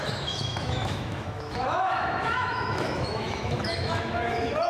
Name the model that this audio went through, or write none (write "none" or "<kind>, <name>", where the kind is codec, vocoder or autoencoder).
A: autoencoder, DAC-VAE